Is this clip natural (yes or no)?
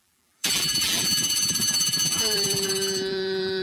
no